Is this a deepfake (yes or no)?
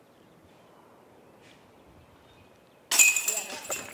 no